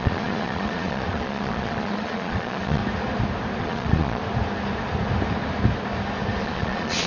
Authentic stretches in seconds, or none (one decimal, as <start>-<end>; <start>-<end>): 2.8-3.6; 4.2-6.4